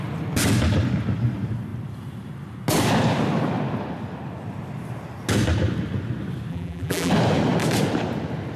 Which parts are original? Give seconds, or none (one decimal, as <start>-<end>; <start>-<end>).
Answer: 0.0-6.5; 7.1-8.6